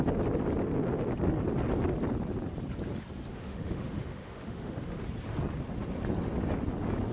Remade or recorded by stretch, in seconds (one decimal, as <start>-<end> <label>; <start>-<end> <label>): 0.0-3.3 recorded; 3.3-5.0 remade; 5.0-7.1 recorded